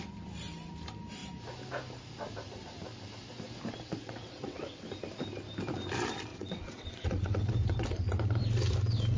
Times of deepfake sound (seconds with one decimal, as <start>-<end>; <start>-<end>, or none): 4.0-4.8; 6.3-7.5